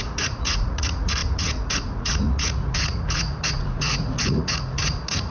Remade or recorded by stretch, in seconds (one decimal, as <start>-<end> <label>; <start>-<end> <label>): 0.0-5.3 remade